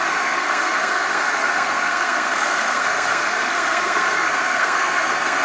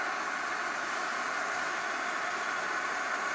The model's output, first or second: first